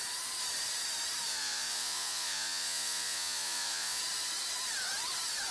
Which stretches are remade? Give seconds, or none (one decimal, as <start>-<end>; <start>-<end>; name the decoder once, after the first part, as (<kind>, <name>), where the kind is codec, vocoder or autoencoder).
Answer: 1.3-4.0 (vocoder, Vocos)